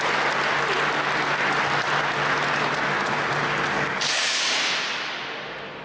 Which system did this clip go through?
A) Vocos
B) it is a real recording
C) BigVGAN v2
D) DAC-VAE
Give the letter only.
B